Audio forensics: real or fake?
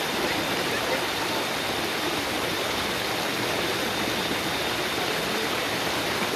real